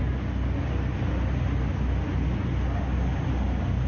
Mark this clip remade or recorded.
recorded